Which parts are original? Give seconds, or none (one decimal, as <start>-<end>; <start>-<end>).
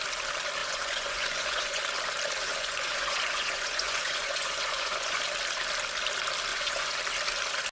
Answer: 0.0-0.6; 1.8-2.5; 5.2-6.5; 7.0-7.7